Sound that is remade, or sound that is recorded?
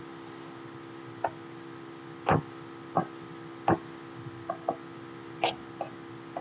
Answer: recorded